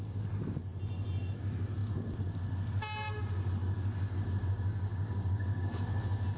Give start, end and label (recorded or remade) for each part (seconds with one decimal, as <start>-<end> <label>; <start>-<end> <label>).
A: 0.0-4.9 recorded; 4.9-6.0 remade; 6.0-6.4 recorded